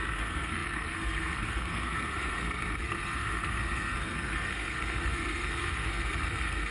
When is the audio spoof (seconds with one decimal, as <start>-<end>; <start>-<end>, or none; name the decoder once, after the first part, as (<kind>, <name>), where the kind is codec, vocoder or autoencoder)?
0.0-6.7 (codec, SNAC)